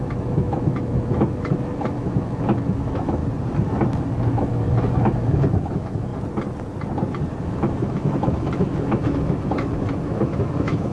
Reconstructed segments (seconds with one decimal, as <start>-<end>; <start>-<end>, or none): 0.0-3.2; 4.1-6.1; 7.4-10.9